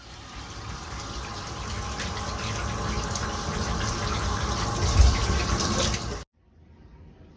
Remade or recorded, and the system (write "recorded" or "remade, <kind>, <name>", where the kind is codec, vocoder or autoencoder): recorded